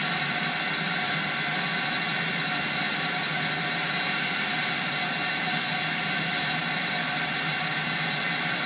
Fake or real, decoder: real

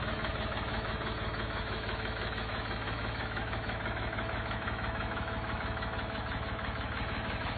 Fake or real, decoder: fake, autoencoder, DAC-VAE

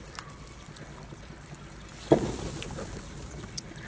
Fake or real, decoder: real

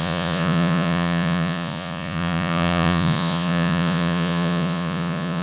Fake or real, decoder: fake, vocoder, Vocos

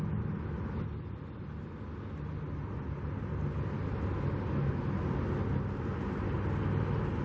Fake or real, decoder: real